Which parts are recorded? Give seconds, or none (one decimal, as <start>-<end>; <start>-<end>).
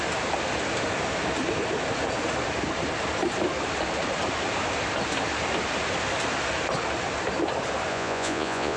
0.0-7.9